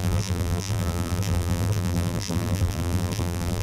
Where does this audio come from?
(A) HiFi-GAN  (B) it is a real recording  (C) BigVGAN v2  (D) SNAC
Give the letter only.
C